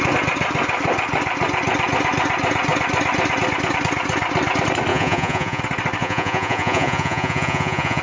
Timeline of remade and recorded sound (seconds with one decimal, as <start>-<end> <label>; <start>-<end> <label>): 0.0-4.9 recorded; 4.9-5.6 remade; 5.6-6.0 recorded; 6.0-8.0 remade